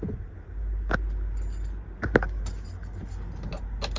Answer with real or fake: real